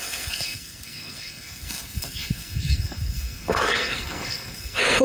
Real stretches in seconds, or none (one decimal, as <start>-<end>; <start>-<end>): none